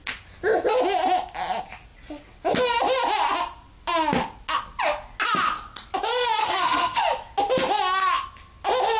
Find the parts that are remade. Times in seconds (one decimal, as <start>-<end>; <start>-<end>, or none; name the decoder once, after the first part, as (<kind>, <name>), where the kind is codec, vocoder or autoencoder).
6.4-7.0 (codec, SNAC)